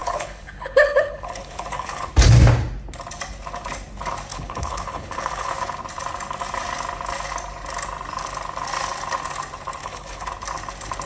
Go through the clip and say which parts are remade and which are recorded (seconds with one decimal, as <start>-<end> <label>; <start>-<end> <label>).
0.0-2.1 remade; 2.1-4.3 recorded; 4.3-5.5 remade; 5.5-9.8 recorded; 9.8-10.3 remade; 10.3-11.1 recorded